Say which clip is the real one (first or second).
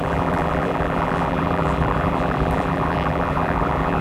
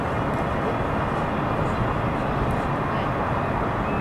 second